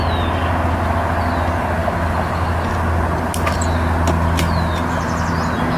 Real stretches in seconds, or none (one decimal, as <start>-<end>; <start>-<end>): 0.0-5.8